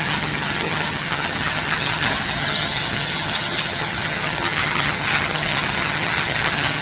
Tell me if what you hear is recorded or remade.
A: remade